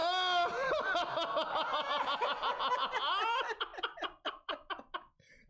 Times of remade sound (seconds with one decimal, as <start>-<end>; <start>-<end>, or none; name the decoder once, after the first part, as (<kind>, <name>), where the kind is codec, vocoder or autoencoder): 3.7-5.5 (vocoder, BigVGAN v2)